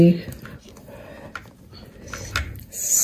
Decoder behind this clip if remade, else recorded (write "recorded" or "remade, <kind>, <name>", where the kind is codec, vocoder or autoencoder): recorded